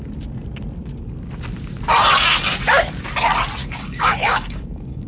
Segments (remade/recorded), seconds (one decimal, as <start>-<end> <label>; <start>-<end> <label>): 0.0-3.6 recorded; 3.6-5.1 remade